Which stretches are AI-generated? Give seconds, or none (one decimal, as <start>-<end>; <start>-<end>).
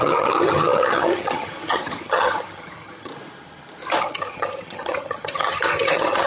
0.0-3.1; 4.0-6.3